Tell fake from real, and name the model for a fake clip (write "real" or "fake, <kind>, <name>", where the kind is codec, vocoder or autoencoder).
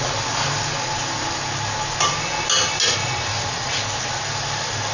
real